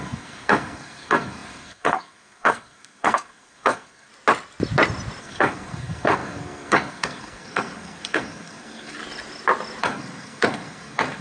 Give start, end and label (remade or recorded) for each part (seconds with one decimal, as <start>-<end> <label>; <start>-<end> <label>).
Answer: 0.0-4.1 remade; 4.1-5.2 recorded; 5.2-9.0 remade; 9.0-9.8 recorded; 9.8-11.2 remade